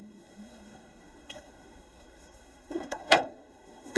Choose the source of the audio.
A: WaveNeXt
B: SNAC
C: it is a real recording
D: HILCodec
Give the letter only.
B